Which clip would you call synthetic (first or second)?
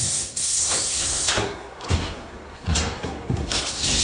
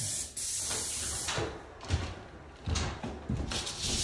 first